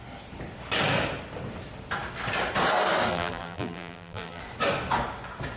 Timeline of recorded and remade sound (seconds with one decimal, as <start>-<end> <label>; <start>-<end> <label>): 0.0-3.1 recorded; 3.1-4.4 remade; 4.4-5.6 recorded